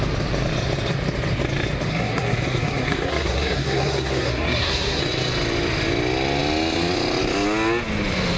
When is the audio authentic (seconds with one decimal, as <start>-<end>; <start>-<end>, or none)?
0.0-1.9; 5.0-8.4